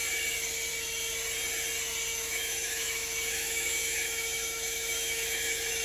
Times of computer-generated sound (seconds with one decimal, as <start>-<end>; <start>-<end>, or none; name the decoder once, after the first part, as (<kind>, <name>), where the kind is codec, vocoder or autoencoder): 2.1-5.8 (autoencoder, DAC-VAE)